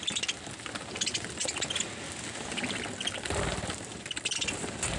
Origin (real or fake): real